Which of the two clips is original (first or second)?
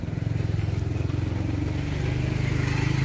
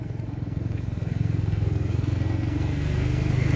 first